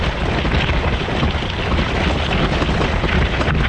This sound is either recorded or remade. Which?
recorded